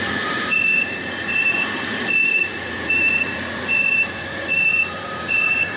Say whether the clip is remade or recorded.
remade